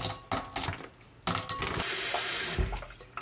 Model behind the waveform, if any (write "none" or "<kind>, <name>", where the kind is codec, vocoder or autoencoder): none